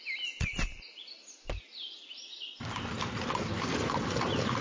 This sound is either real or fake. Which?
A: real